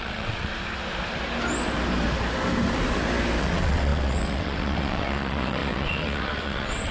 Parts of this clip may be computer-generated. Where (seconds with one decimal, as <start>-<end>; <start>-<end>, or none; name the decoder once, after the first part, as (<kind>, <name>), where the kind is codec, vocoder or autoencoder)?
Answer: 0.0-0.5 (vocoder, WaveNeXt); 3.4-6.9